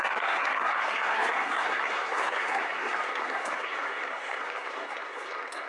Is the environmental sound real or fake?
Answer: fake